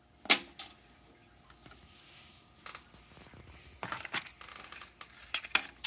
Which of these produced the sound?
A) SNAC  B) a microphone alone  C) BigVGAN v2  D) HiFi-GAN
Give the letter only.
B